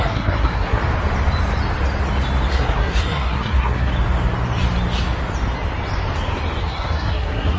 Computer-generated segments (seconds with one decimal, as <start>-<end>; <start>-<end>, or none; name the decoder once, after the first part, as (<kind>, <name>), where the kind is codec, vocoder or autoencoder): 0.0-0.8 (codec, SNAC); 2.5-3.9; 6.6-7.6